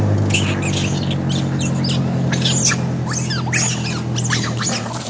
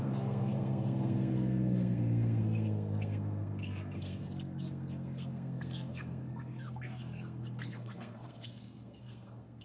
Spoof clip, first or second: second